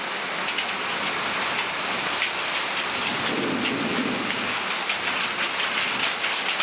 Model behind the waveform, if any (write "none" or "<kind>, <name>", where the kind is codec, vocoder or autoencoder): none